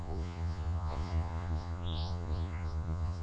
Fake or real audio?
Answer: fake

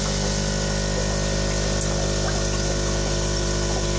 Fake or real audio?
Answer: real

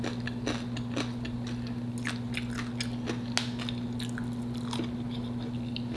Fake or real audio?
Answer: real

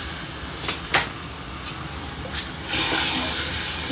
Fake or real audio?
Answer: real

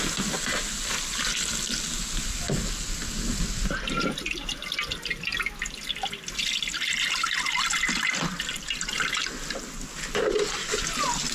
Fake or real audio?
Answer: real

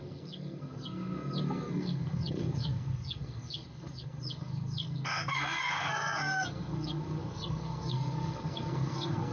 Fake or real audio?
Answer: fake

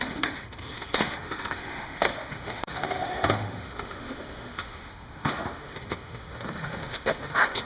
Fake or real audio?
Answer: fake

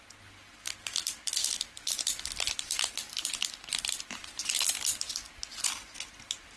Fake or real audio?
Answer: real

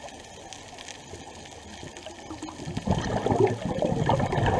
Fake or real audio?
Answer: real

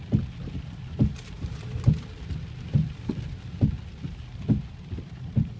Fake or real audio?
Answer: fake